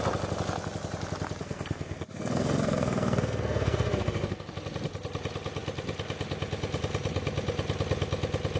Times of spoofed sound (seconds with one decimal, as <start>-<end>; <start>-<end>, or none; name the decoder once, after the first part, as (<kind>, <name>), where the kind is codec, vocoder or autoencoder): 1.4-4.5 (codec, SNAC)